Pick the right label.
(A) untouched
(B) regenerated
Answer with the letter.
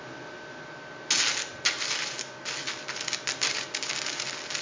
A